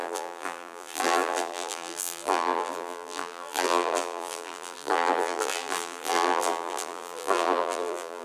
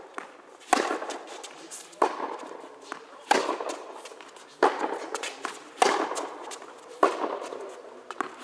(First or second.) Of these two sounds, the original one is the second